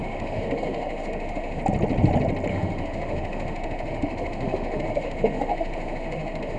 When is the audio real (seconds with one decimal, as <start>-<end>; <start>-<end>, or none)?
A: 1.6-2.5

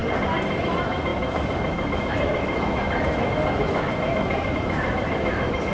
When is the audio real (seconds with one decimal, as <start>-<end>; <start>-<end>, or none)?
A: 0.0-0.6

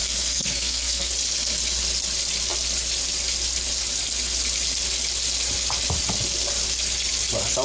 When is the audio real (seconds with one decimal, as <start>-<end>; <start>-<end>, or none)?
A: 1.1-7.6

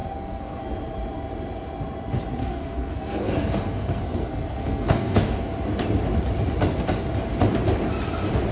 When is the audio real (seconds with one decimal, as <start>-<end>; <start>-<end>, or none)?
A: 0.6-2.4; 5.4-8.5

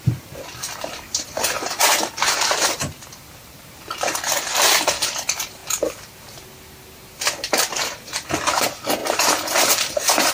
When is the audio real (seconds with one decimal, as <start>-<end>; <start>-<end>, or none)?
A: 5.6-7.2

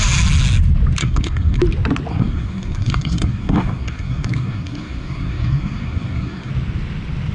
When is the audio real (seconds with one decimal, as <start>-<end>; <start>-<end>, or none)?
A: 0.0-1.0; 1.6-2.1; 6.5-7.3

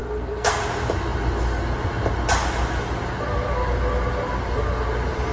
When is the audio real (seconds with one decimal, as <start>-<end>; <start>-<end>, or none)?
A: 0.6-5.3

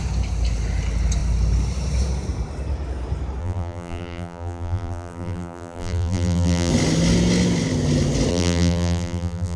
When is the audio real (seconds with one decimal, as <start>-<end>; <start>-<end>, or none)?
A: 0.0-3.4; 6.7-8.3